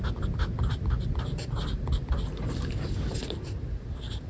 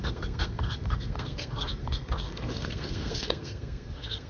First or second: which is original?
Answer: first